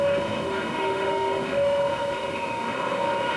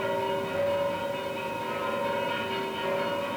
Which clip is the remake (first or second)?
first